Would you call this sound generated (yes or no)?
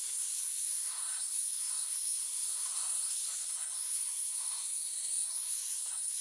yes